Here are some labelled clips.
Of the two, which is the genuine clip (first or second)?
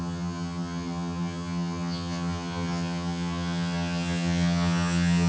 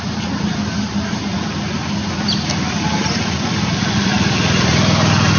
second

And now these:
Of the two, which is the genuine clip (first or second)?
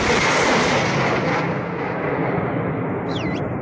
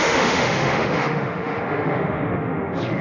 first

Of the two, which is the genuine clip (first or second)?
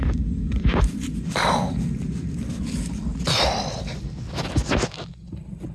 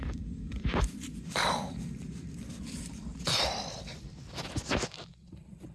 first